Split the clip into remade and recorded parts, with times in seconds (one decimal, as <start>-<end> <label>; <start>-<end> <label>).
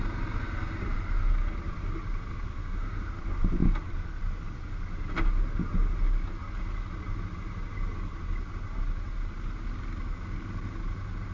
0.0-2.5 recorded; 2.5-3.1 remade; 3.1-11.3 recorded